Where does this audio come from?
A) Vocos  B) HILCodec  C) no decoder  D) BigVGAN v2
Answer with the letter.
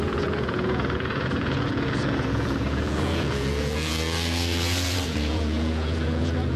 A